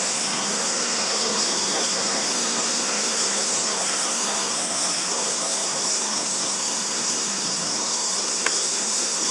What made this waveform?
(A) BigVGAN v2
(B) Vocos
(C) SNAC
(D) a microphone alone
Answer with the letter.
C